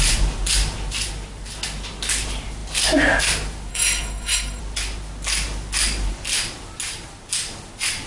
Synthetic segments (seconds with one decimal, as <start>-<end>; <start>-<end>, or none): 3.7-4.6